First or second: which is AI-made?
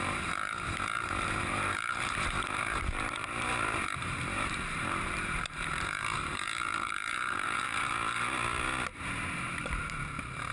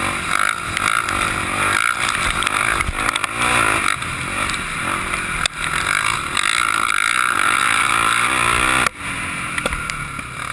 first